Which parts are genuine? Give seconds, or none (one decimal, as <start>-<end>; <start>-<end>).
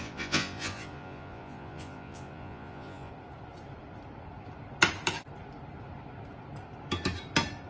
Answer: 3.1-7.7